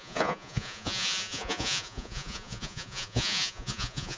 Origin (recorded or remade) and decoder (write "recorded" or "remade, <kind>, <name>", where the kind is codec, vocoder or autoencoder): remade, vocoder, Vocos